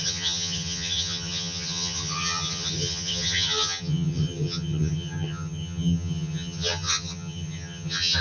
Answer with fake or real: fake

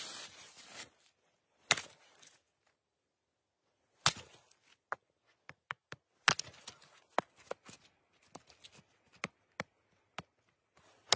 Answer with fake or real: real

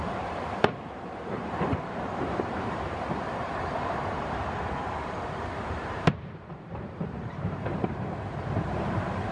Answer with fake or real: fake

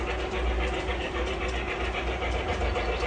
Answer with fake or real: real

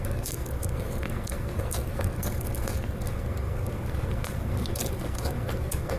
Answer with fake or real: fake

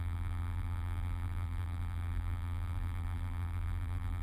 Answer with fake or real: fake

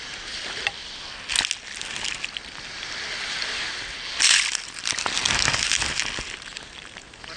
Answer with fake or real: real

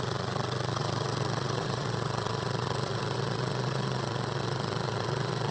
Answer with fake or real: fake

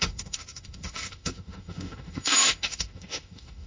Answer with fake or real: fake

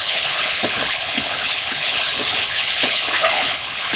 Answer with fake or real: fake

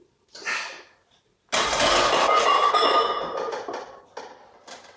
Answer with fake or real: real